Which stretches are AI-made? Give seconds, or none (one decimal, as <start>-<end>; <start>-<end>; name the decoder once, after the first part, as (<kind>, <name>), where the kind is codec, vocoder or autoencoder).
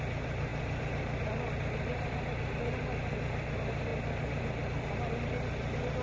none